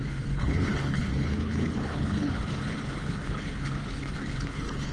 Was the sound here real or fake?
fake